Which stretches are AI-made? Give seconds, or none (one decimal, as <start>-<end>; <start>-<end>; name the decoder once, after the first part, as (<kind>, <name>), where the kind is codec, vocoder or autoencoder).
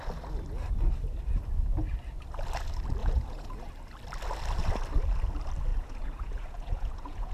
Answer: 3.0-3.7 (vocoder, Vocos); 5.7-7.3